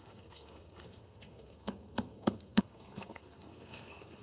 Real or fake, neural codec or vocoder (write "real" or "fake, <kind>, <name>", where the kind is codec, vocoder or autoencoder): fake, codec, SNAC